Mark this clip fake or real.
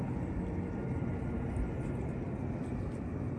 real